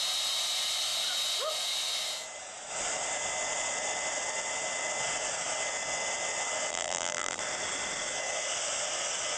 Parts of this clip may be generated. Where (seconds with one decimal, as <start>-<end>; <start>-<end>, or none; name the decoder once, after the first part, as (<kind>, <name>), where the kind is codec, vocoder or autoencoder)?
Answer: 6.7-7.4 (vocoder, BigVGAN v2)